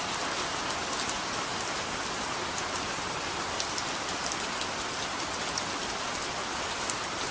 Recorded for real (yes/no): yes